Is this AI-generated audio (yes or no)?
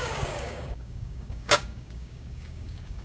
yes